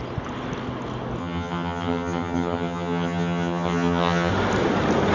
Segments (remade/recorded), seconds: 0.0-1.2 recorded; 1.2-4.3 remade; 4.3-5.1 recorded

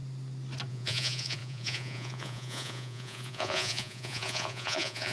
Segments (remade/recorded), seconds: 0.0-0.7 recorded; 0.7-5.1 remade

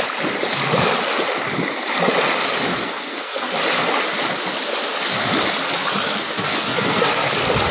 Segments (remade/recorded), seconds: 0.0-2.7 recorded; 2.7-3.5 remade; 3.5-5.6 recorded; 5.6-7.3 remade; 7.3-7.7 recorded